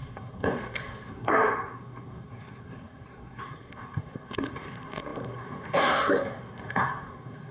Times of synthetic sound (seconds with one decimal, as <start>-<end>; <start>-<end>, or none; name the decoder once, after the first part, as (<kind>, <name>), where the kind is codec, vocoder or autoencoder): 0.0-7.5 (codec, SNAC)